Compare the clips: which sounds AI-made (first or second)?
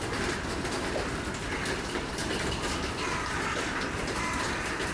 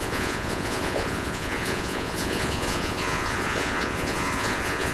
second